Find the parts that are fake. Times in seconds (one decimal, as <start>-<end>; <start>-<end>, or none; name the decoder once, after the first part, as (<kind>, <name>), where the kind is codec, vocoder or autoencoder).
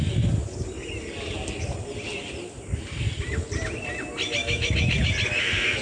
4.4-5.1 (autoencoder, DAC-VAE)